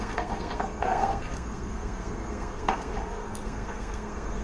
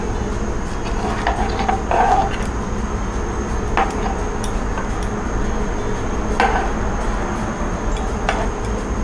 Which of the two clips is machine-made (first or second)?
first